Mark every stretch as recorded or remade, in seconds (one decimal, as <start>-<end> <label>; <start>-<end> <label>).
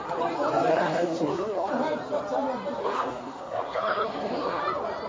0.0-0.7 recorded; 0.7-1.7 remade; 1.7-2.8 recorded; 2.8-4.6 remade; 4.6-5.1 recorded